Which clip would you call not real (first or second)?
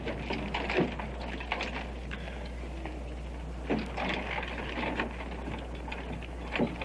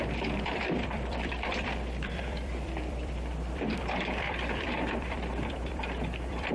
second